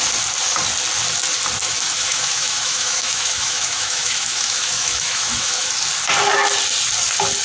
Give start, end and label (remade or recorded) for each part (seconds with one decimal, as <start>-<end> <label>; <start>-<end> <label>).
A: 0.0-1.6 recorded; 1.6-5.7 remade; 5.7-7.4 recorded